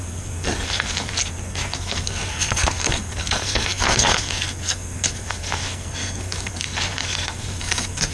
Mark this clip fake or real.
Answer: fake